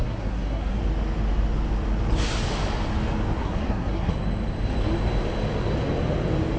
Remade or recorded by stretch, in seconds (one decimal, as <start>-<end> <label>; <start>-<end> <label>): 0.0-0.8 remade; 0.8-3.4 recorded; 3.4-4.1 remade; 4.1-6.6 recorded